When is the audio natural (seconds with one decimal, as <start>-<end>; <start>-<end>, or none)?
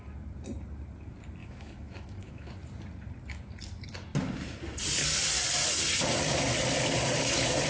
0.0-1.4; 2.5-7.7